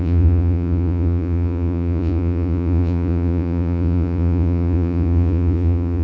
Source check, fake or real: fake